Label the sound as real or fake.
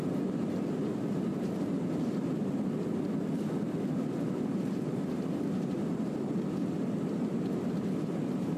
real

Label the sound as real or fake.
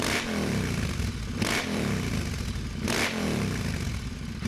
fake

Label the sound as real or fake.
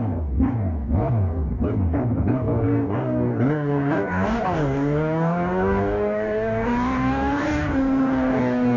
fake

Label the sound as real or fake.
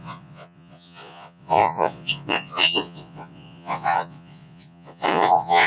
fake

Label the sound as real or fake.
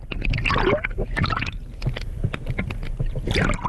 real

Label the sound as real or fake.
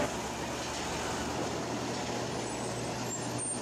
real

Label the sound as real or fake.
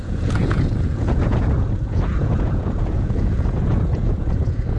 fake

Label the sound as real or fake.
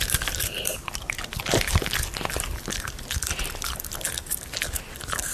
real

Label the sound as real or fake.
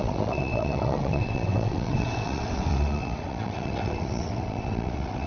fake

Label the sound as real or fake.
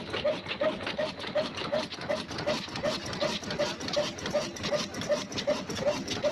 real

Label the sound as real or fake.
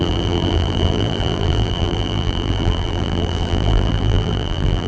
fake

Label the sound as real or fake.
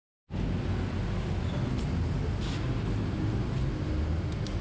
real